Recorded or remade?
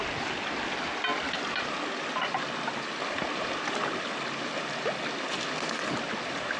recorded